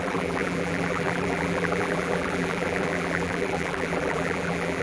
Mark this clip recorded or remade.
remade